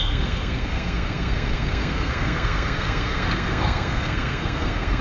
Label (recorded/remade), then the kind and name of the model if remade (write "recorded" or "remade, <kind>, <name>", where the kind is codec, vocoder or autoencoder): remade, codec, SNAC